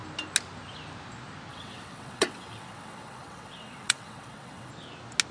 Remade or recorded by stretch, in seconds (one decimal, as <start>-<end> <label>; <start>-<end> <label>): 0.0-1.5 recorded; 1.5-4.7 remade; 4.7-5.3 recorded